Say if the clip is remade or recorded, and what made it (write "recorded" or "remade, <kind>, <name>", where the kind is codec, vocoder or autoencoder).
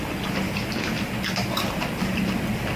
recorded